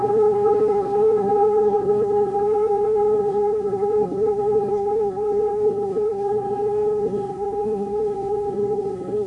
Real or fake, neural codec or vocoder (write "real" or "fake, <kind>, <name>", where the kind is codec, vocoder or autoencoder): fake, codec, SNAC